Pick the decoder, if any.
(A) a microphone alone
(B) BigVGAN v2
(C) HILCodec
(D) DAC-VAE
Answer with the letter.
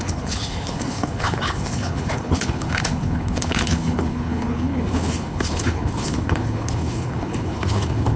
C